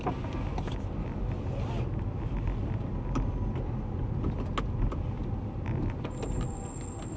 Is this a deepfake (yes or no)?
no